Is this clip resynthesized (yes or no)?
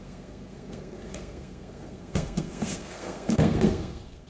yes